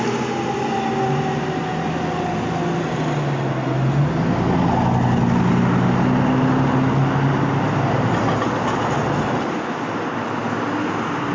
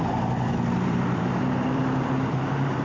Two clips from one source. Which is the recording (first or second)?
first